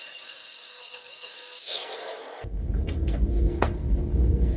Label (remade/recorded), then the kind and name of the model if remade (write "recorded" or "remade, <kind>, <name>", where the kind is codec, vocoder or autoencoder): remade, codec, SNAC